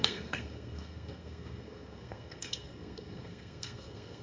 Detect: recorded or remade remade